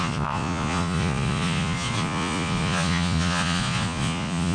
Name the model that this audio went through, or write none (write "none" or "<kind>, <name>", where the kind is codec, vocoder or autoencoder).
vocoder, Vocos